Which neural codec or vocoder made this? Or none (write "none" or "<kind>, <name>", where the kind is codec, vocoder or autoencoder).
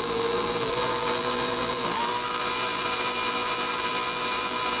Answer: vocoder, BigVGAN v2